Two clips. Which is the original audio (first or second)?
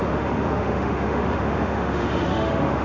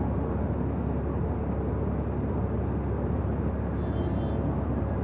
second